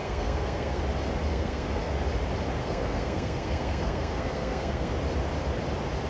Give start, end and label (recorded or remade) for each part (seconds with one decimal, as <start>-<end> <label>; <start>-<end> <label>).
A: 0.0-0.8 remade; 0.8-1.3 recorded; 1.3-1.9 remade; 1.9-2.6 recorded; 2.6-4.9 remade; 4.9-6.1 recorded